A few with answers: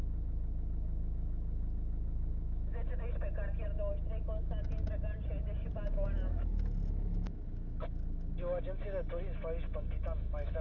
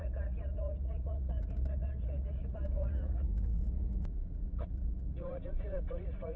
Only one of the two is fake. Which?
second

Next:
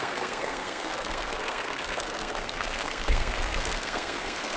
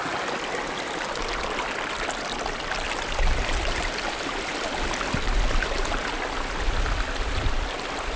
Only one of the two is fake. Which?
first